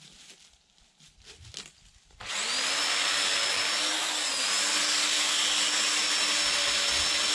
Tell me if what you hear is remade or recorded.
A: recorded